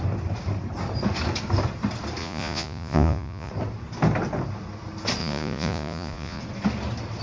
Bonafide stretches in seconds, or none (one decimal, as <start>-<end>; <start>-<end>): 0.0-2.2; 3.5-5.2; 6.4-7.2